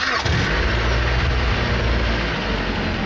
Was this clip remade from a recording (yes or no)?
no